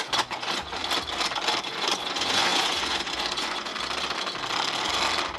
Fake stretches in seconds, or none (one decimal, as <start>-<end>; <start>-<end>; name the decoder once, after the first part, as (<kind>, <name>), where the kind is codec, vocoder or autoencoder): 0.0-0.8 (vocoder, Vocos); 1.6-3.7